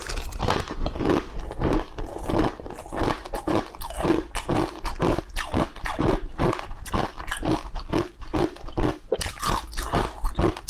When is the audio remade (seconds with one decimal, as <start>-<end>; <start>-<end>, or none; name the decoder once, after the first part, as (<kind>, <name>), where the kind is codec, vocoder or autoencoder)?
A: 4.5-6.4 (vocoder, BigVGAN v2)